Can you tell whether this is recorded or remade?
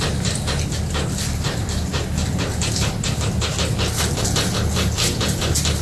recorded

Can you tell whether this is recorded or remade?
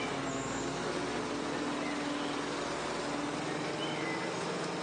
recorded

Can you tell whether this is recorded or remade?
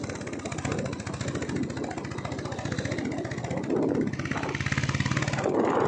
recorded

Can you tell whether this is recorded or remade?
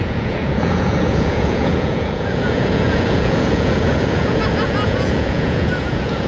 remade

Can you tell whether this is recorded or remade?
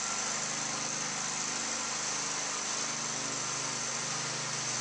recorded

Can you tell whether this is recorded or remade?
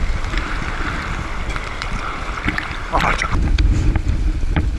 remade